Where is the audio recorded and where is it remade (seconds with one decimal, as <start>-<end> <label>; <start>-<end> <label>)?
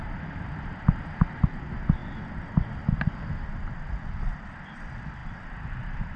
0.0-6.2 recorded